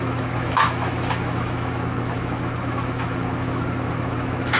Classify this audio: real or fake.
fake